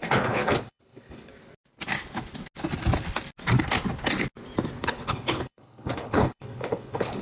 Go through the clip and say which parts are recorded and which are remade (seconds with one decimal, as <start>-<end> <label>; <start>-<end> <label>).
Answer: 0.0-1.3 remade; 1.3-4.8 recorded; 4.8-7.2 remade